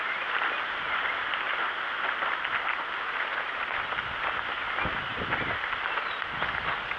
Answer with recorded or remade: recorded